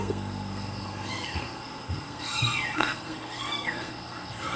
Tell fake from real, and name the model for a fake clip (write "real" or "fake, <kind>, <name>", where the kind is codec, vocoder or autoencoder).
fake, codec, SNAC